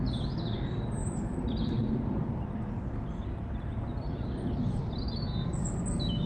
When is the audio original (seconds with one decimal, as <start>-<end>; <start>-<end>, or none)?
0.0-1.0; 4.8-6.3